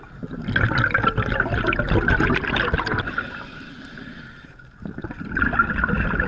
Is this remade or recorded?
recorded